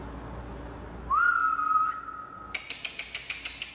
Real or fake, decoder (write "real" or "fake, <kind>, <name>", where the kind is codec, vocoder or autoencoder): real